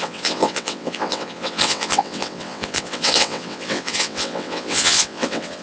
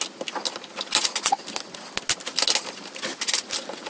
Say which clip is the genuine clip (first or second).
second